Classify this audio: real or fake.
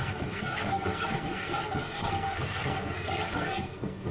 fake